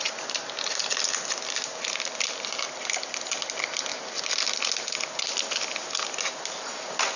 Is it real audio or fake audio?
real